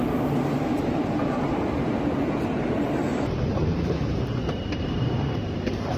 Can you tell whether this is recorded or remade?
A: remade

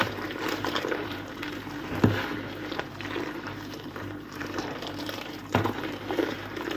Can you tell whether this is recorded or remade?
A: remade